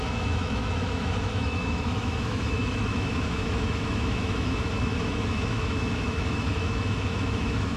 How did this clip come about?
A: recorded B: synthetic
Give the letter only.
B